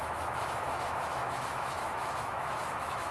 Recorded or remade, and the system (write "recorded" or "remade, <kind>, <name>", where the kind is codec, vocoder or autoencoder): remade, autoencoder, DAC-VAE